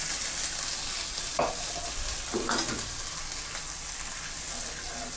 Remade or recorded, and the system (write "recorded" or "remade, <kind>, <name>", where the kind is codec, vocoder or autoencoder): recorded